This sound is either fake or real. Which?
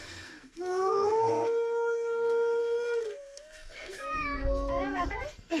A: fake